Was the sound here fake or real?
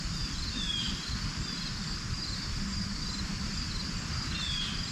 real